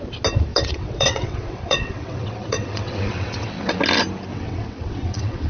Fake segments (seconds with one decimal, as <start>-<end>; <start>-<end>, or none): 0.5-3.8; 4.3-5.5